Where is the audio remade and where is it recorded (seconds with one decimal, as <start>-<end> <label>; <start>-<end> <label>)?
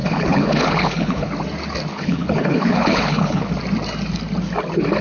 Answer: 0.0-1.3 remade; 1.3-1.9 recorded; 1.9-3.5 remade; 3.5-5.0 recorded